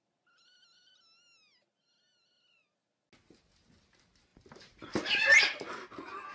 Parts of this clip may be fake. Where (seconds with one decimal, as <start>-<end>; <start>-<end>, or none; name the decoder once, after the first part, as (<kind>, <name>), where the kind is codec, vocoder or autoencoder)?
4.3-5.4 (vocoder, BigVGAN v2)